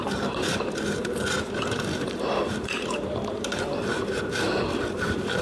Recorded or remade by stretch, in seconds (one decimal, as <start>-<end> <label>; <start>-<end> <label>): 0.0-3.9 remade; 3.9-4.8 recorded; 4.8-5.4 remade